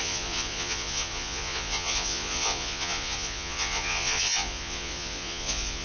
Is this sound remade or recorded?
remade